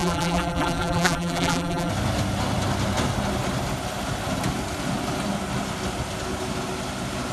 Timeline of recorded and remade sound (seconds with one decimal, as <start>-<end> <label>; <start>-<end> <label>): 0.0-1.9 remade; 1.9-7.3 recorded